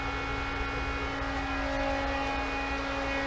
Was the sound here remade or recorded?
recorded